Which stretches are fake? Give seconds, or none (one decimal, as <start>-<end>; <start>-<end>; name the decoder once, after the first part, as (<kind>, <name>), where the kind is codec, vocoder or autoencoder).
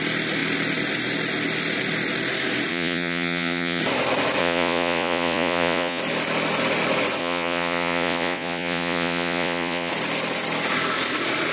2.7-3.8 (vocoder, Vocos); 4.4-6.0; 7.2-9.9